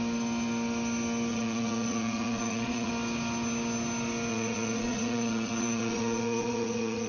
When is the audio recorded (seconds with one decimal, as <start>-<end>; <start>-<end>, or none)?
0.0-1.3; 2.9-4.3